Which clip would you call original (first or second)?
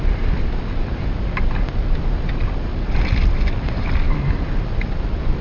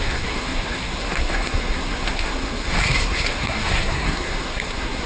first